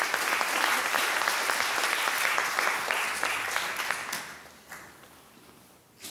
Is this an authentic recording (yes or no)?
yes